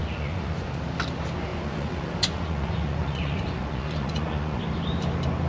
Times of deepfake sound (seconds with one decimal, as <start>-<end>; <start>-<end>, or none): 0.0-0.8; 1.5-4.6